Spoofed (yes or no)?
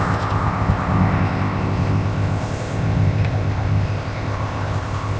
yes